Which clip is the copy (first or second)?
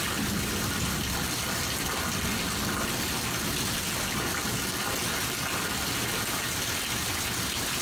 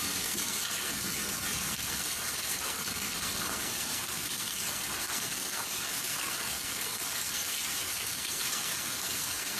second